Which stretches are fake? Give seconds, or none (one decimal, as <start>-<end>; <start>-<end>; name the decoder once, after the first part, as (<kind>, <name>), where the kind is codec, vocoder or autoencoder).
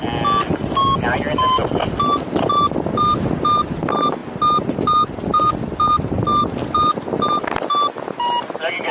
none